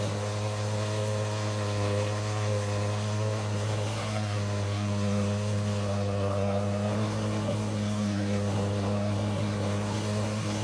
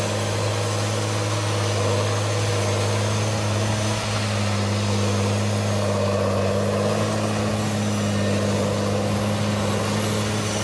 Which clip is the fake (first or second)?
first